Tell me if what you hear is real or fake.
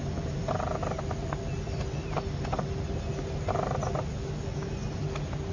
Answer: real